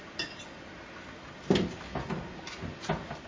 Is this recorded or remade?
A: recorded